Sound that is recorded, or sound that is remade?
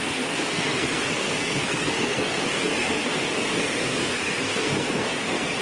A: remade